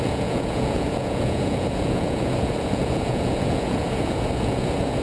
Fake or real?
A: fake